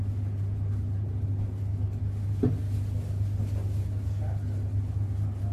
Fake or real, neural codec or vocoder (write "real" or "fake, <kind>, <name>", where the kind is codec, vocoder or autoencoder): real